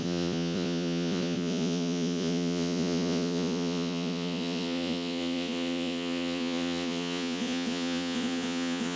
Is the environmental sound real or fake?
fake